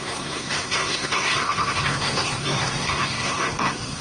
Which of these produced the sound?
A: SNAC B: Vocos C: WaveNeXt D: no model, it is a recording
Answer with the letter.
A